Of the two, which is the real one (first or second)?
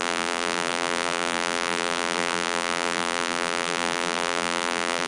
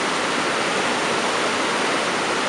second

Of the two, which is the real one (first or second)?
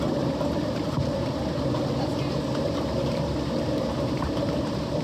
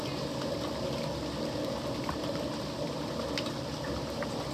second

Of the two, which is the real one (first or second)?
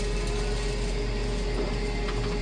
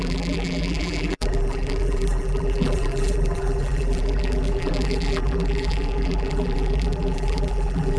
first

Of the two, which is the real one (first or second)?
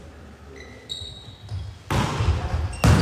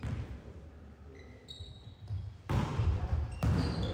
first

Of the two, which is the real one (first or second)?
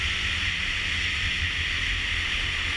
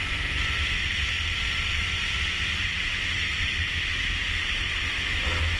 first